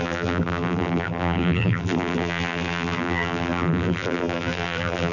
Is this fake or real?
fake